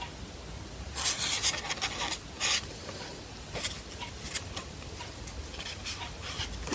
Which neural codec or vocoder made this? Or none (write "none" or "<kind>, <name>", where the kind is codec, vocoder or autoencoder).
none